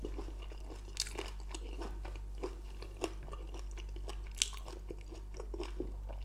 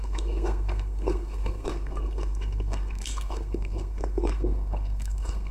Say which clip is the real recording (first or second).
first